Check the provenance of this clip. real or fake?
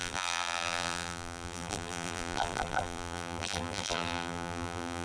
fake